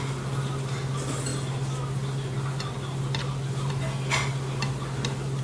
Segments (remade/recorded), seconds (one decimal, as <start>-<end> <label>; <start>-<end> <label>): 0.0-5.4 recorded